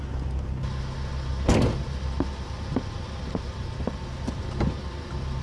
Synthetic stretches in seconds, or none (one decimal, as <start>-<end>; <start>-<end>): none